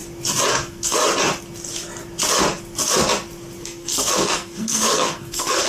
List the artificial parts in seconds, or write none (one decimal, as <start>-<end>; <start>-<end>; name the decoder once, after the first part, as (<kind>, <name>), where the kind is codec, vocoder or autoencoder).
0.5-1.0 (codec, SNAC); 3.6-5.7